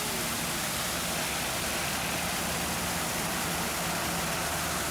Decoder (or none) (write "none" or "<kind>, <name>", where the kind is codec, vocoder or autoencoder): none